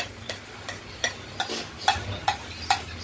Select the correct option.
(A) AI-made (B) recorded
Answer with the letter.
B